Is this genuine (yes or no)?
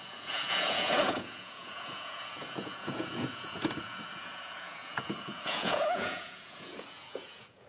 no